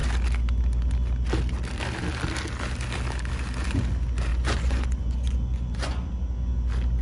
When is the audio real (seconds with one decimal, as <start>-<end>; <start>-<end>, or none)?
0.0-4.3; 6.1-7.0